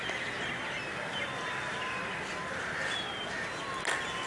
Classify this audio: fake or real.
real